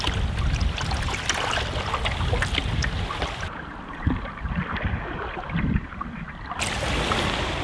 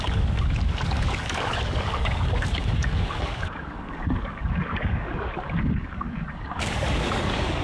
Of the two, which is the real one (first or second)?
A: first